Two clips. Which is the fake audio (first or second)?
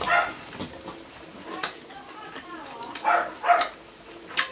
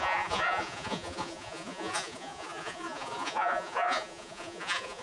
second